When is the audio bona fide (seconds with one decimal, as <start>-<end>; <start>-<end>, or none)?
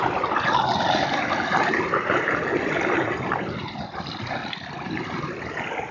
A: 0.0-5.9